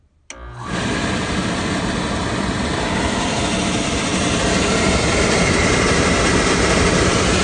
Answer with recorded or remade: recorded